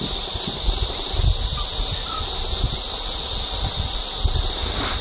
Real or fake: real